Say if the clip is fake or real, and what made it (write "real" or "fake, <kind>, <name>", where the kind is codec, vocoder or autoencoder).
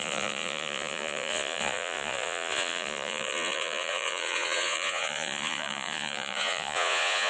fake, vocoder, Vocos